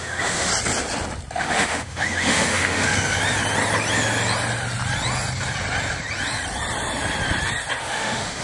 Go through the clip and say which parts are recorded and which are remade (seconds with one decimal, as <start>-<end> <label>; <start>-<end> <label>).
0.0-0.5 remade; 0.5-1.4 recorded; 1.4-2.9 remade; 2.9-7.8 recorded; 7.8-8.4 remade

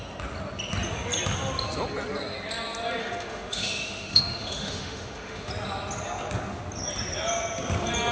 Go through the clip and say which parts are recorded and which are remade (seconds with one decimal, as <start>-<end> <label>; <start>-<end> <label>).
0.0-3.0 recorded; 3.0-5.5 remade; 5.5-8.1 recorded

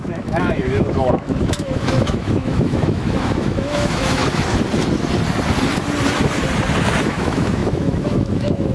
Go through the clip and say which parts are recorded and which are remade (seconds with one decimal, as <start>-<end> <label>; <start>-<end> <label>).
0.0-4.2 remade; 4.2-7.0 recorded; 7.0-8.7 remade

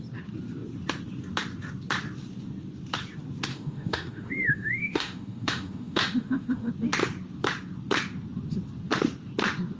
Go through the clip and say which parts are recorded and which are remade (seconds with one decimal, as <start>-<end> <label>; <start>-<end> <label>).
0.0-3.5 recorded; 3.5-6.7 remade; 6.7-9.8 recorded

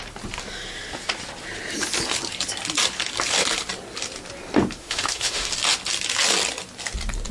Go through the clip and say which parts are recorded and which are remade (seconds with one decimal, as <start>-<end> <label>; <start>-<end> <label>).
0.0-4.8 recorded; 4.8-5.5 remade; 5.5-7.3 recorded

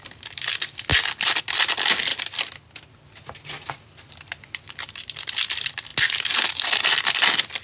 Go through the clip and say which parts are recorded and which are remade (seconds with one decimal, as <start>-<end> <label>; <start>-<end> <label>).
0.0-7.6 recorded

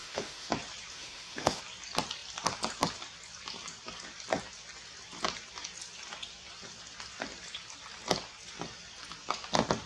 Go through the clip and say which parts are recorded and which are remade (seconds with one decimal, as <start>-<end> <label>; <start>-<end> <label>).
0.0-0.5 remade; 0.5-0.9 recorded; 0.9-1.6 remade; 1.6-9.9 recorded

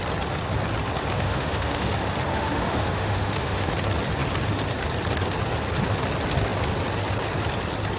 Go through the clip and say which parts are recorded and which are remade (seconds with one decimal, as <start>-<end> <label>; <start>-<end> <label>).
0.0-1.1 recorded; 1.1-1.9 remade; 1.9-2.3 recorded; 2.3-3.7 remade; 3.7-8.0 recorded